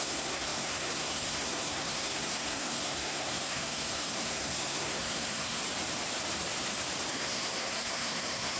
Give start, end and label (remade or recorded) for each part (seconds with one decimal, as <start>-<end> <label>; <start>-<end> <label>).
0.0-5.6 remade; 5.6-7.1 recorded; 7.1-8.6 remade